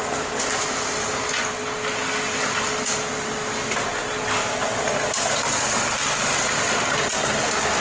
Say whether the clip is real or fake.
real